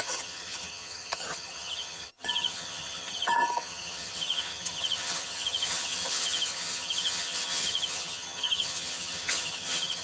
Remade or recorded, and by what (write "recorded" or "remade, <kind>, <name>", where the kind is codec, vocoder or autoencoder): remade, vocoder, HiFi-GAN